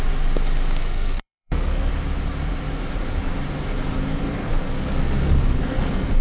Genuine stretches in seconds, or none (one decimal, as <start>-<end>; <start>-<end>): 0.0-0.8; 1.9-4.2